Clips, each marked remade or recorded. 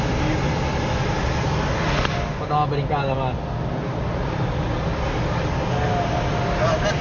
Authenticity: recorded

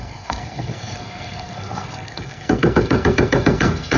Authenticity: remade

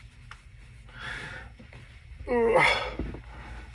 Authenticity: recorded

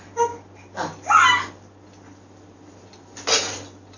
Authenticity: recorded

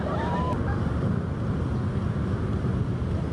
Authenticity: recorded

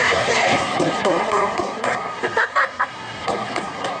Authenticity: remade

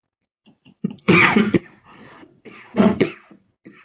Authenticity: remade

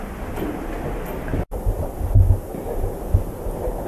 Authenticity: recorded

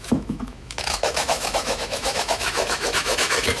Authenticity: remade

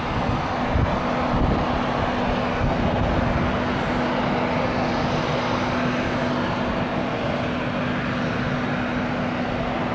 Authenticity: recorded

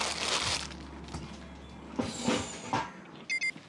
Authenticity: recorded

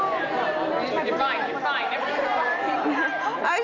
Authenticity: recorded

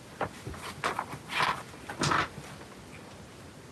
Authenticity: recorded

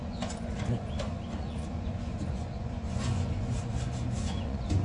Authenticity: remade